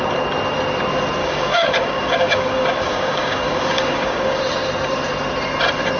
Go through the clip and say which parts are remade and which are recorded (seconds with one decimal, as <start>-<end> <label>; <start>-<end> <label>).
0.0-1.2 recorded; 1.2-4.4 remade; 4.4-6.0 recorded